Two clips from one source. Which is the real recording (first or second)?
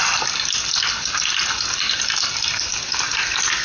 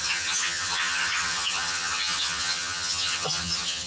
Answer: first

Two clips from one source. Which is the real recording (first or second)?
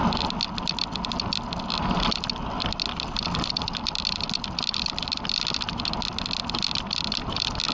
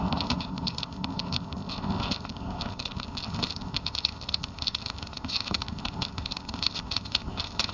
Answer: first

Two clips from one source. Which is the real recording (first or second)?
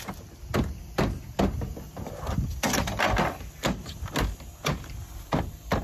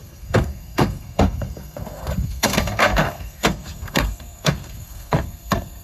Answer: first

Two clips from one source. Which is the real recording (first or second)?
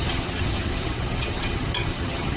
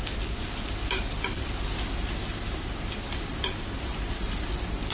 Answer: second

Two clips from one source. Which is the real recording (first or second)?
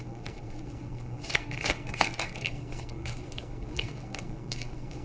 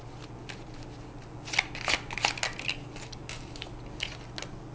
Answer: second